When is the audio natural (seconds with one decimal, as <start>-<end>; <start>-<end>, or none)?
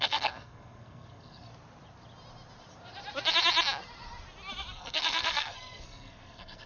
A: 1.5-4.7